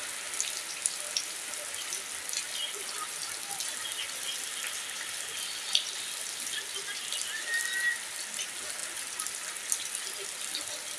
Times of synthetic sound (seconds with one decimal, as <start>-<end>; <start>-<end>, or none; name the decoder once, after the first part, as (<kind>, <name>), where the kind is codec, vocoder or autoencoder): none

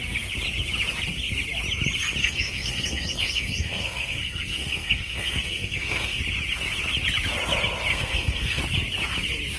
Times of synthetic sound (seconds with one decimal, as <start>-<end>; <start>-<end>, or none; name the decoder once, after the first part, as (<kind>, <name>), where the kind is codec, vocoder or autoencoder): 2.2-6.2 (codec, SNAC); 7.9-8.6

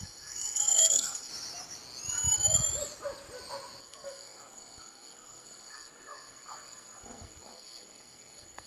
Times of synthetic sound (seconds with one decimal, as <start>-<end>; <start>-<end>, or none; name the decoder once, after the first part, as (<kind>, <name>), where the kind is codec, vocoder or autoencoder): 0.0-1.3 (codec, SNAC); 3.8-8.7

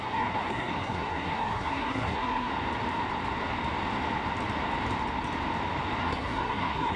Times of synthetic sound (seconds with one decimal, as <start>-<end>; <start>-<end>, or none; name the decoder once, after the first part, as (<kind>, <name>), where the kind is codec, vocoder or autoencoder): 0.0-2.5 (codec, SNAC); 6.0-7.0

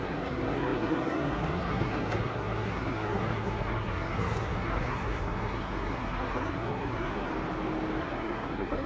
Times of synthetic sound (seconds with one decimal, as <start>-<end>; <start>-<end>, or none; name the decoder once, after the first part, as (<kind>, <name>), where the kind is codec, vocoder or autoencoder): 0.0-7.3 (codec, SNAC); 8.0-8.9

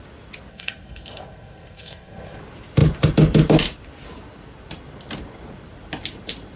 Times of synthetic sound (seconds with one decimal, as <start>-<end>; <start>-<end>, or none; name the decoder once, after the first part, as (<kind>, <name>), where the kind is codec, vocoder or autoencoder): 0.5-2.4 (codec, SNAC)